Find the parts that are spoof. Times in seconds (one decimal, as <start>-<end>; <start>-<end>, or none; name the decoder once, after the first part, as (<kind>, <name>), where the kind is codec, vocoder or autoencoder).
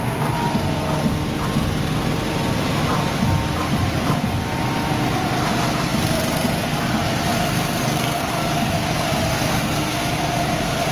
7.8-8.3 (codec, SNAC)